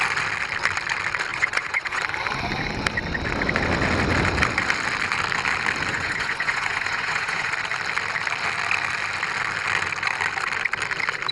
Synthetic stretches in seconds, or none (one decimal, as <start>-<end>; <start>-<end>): 1.3-2.0; 5.9-7.5